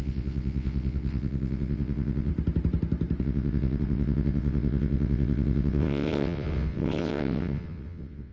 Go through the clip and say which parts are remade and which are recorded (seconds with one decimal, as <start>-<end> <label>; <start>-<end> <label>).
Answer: 0.0-2.3 remade; 2.3-3.2 recorded; 3.2-8.3 remade